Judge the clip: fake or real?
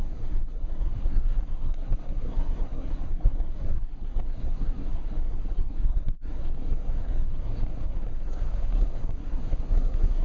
fake